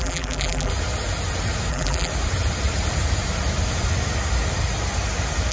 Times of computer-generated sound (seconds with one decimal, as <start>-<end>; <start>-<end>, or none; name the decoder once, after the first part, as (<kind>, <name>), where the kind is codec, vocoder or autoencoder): 0.0-0.7 (vocoder, BigVGAN v2); 1.7-2.1